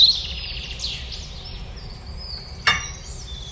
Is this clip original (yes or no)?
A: yes